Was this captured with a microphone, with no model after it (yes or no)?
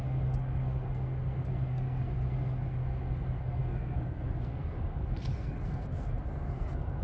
no